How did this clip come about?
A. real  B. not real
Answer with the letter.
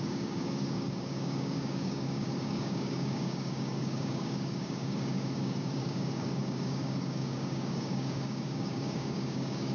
B